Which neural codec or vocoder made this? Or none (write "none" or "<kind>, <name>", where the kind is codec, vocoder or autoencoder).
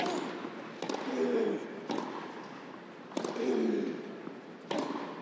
none